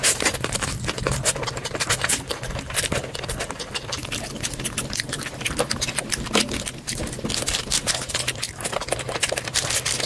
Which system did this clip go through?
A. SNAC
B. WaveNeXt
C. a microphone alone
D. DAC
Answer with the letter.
C